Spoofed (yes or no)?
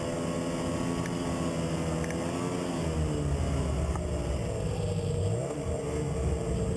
no